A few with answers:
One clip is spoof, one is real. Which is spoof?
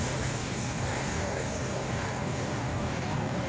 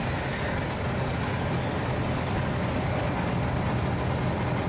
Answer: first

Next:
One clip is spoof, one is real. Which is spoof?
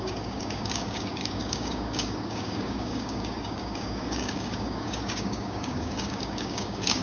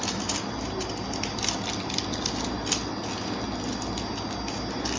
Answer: first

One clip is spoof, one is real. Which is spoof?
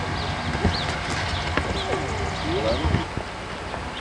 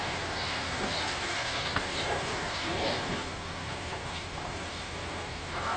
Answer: second